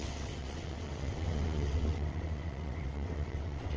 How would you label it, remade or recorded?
remade